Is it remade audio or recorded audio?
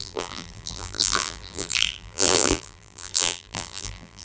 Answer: remade